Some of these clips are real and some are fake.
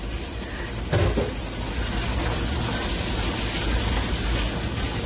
real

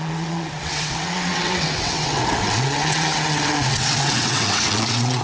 fake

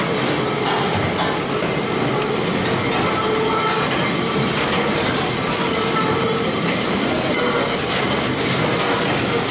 real